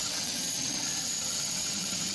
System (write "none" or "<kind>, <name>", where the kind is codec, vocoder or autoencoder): vocoder, WaveNeXt